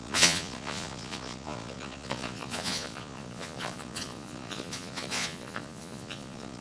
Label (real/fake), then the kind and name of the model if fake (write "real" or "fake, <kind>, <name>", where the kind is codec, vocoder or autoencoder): fake, vocoder, Vocos